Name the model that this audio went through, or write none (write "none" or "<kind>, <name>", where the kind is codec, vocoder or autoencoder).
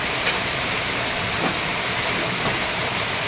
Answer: vocoder, BigVGAN v2